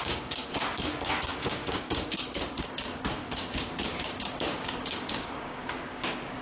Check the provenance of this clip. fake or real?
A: fake